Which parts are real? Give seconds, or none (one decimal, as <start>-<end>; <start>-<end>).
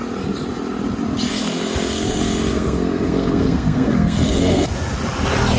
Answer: 0.0-1.3; 4.7-5.6